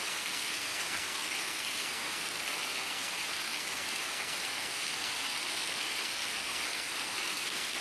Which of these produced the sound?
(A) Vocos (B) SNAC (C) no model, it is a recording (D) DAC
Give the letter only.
B